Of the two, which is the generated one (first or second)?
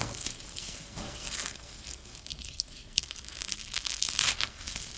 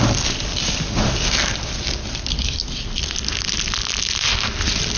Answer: first